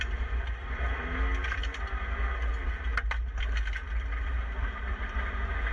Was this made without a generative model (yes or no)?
yes